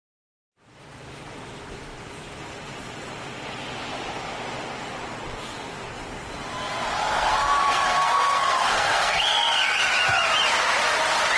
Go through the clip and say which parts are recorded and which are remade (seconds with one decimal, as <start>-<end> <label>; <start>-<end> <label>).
0.0-7.0 recorded; 7.0-9.9 remade; 9.9-11.4 recorded